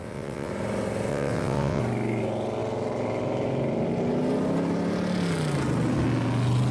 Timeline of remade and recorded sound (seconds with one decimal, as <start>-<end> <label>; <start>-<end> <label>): 0.0-0.5 remade; 0.5-1.1 recorded; 1.1-1.8 remade; 1.8-6.7 recorded